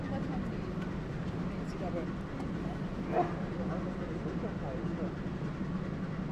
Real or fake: real